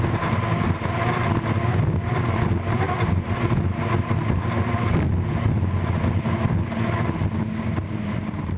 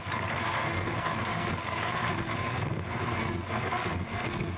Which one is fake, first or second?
second